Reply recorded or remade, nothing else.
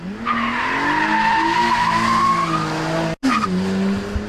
recorded